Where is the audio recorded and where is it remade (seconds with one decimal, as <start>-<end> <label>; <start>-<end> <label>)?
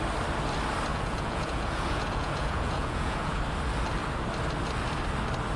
0.0-0.9 recorded; 0.9-3.4 remade; 3.4-5.6 recorded